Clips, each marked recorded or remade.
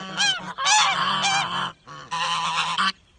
recorded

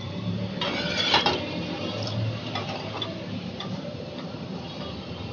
remade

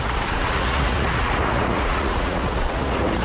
remade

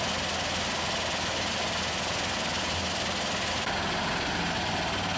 recorded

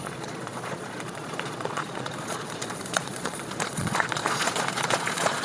remade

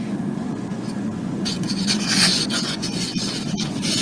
remade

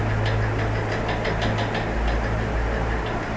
recorded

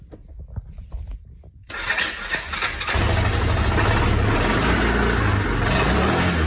recorded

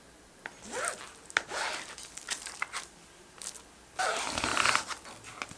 recorded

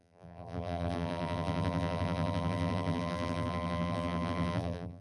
remade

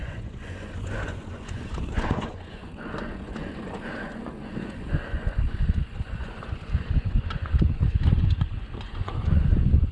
remade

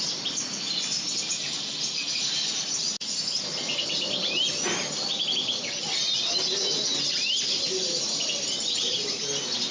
recorded